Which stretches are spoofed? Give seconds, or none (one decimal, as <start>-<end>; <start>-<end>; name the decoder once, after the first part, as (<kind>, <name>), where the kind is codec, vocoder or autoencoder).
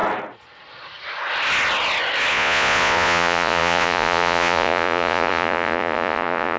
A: 2.3-6.6 (vocoder, Vocos)